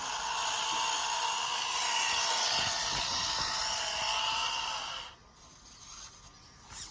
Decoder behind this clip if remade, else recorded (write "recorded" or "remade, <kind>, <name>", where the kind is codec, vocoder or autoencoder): recorded